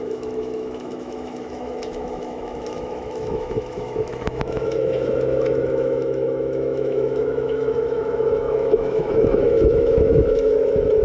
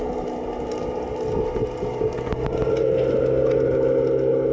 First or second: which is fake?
first